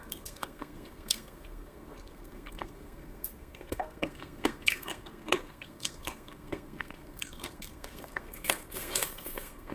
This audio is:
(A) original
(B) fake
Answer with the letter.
B